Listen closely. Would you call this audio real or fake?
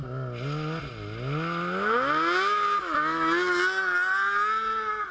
real